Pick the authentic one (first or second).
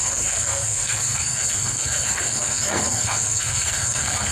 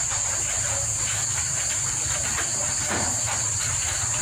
second